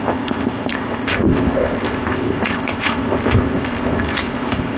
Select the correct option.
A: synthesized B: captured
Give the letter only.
A